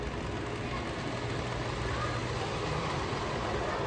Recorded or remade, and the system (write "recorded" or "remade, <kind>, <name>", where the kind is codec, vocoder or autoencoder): recorded